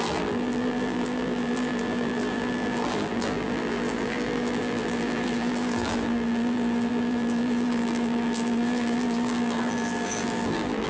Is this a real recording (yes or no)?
no